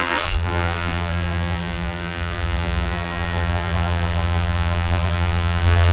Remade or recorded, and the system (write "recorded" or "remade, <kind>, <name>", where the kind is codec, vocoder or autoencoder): remade, vocoder, BigVGAN v2